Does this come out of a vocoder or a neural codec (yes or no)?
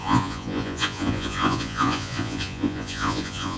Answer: yes